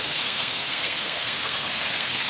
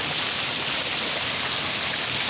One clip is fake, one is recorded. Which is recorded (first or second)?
second